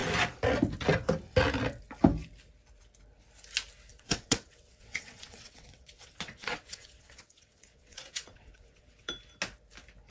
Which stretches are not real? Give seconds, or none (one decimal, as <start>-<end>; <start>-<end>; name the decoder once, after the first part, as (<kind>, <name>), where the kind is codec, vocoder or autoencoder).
3.9-9.1 (vocoder, WaveNeXt)